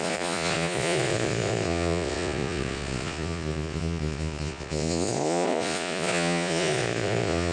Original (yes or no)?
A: no